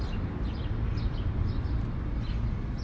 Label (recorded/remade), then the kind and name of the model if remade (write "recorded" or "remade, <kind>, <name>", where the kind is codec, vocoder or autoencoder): recorded